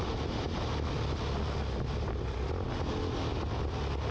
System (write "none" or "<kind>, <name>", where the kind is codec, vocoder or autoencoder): none